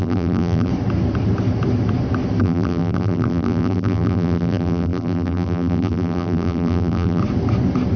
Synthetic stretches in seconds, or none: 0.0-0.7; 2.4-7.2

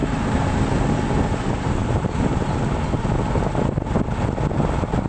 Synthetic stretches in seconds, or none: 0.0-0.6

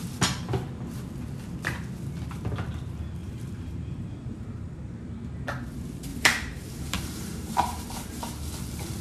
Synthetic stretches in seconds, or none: 3.2-5.1; 6.1-7.9

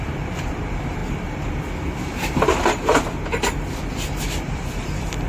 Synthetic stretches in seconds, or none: 0.0-1.0; 4.2-5.3

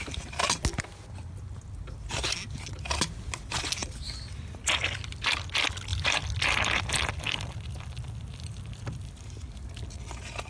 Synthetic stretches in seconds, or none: 5.9-9.1

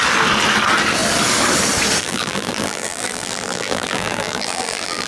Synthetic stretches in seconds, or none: 2.0-5.1

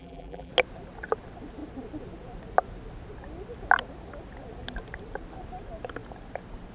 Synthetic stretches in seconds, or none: 0.0-0.5

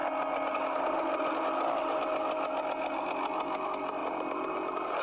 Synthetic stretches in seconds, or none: 4.0-5.0